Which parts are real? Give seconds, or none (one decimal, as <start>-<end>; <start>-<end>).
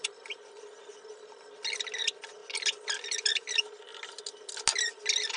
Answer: 0.0-5.4